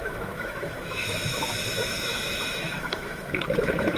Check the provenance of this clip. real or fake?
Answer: fake